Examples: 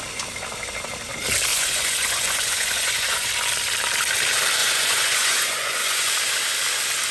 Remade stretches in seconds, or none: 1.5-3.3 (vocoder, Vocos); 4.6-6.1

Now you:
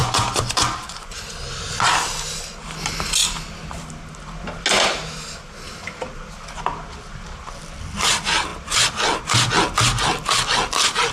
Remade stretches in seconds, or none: 0.0-1.2 (vocoder, Vocos)

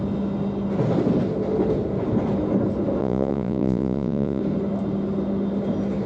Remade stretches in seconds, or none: 3.0-4.4 (vocoder, Vocos)

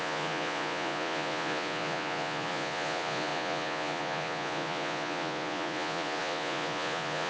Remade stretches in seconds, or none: 0.0-7.3 (vocoder, Vocos)

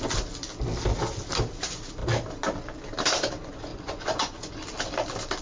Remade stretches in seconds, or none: 3.7-4.5 (vocoder, Vocos)

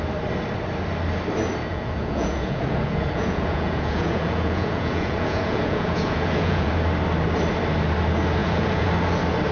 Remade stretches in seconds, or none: 1.7-6.7 (vocoder, Vocos); 8.4-8.9

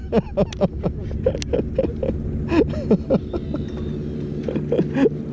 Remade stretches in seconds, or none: none